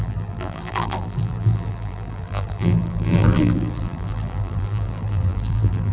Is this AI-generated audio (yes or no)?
yes